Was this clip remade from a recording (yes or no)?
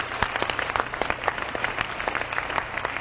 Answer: no